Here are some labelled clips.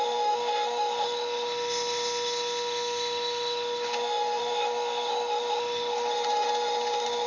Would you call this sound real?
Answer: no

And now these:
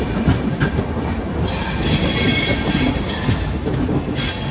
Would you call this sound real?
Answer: yes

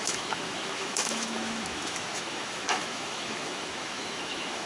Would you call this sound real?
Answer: no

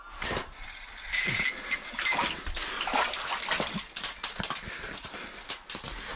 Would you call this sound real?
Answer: yes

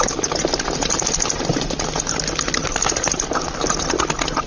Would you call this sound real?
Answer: yes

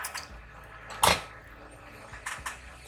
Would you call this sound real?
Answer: yes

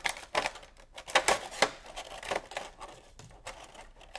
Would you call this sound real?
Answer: yes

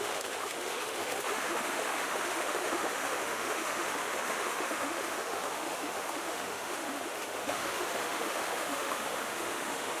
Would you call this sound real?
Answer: no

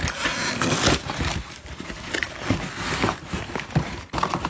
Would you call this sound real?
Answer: yes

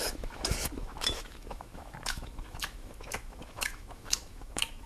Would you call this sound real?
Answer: no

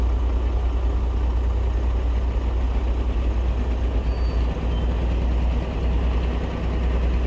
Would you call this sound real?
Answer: yes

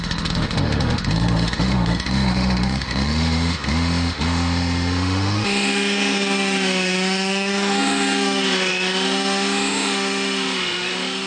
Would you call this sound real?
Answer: no